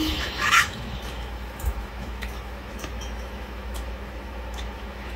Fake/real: fake